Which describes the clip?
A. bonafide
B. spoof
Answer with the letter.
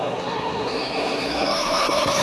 B